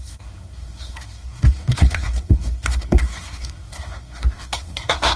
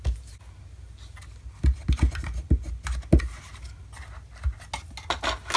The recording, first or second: second